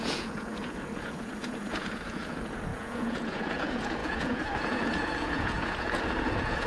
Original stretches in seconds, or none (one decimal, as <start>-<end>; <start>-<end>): none